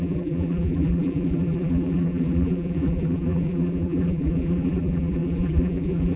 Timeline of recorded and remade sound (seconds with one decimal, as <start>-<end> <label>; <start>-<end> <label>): 0.0-6.2 remade